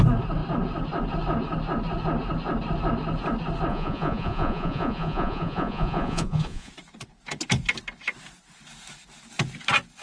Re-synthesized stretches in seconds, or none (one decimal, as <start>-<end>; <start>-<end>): 3.7-6.7